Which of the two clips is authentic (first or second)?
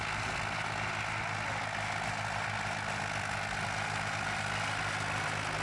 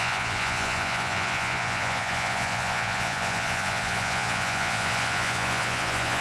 first